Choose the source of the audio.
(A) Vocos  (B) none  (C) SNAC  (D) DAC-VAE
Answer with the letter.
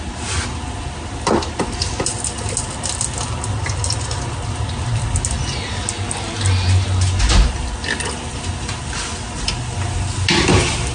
B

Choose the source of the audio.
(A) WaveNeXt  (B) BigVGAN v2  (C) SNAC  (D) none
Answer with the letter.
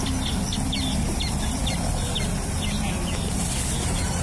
D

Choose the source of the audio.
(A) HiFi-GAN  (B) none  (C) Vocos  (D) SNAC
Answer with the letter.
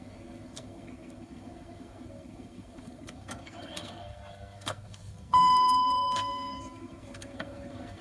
D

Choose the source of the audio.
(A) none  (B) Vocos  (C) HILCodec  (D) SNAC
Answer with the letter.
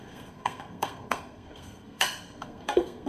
D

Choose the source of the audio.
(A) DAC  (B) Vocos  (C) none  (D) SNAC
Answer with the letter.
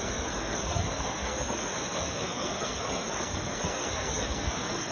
D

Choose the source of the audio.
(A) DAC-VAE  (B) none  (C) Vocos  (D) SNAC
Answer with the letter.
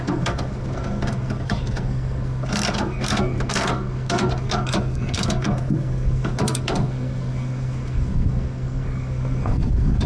D